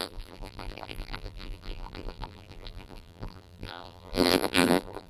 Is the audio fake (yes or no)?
yes